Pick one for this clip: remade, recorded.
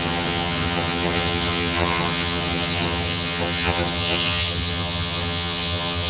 remade